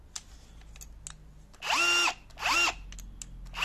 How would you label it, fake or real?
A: real